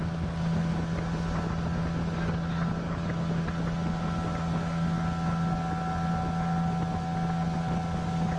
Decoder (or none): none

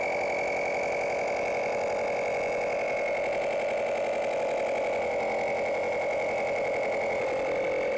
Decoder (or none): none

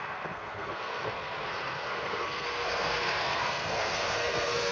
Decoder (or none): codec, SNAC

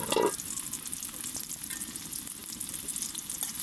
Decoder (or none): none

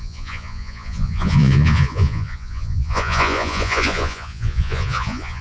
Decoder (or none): vocoder, Vocos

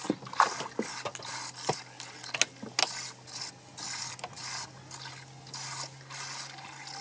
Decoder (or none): none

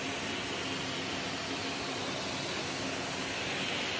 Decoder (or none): none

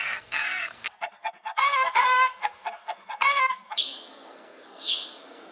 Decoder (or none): codec, SNAC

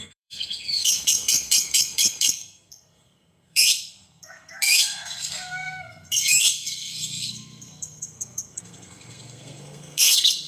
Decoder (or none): codec, SNAC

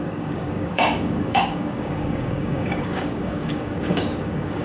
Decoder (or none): codec, DAC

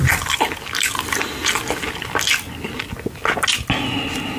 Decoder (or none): none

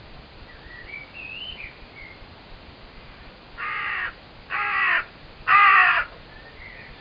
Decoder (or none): vocoder, BigVGAN v2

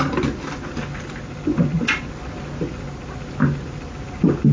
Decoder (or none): none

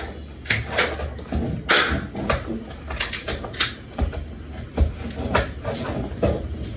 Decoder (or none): none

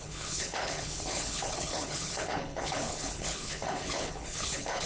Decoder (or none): codec, HILCodec